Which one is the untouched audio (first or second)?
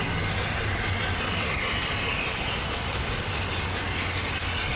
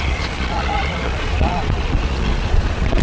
first